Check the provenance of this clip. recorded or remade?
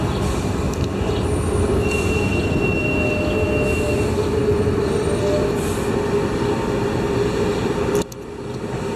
recorded